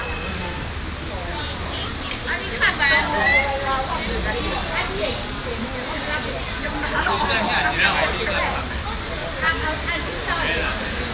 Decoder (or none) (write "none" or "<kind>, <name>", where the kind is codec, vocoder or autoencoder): none